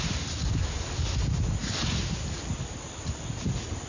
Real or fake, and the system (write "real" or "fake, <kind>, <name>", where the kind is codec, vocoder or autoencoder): real